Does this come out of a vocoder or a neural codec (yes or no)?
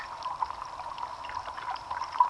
yes